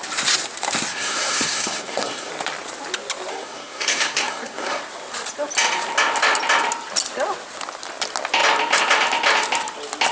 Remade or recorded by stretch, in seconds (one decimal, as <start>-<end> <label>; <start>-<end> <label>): 0.0-0.9 recorded; 0.9-2.3 remade; 2.3-3.3 recorded; 3.3-4.8 remade; 4.8-10.1 recorded